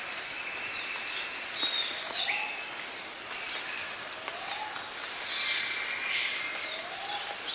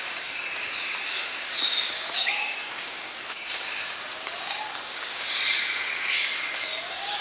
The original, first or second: first